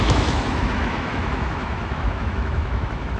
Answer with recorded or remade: remade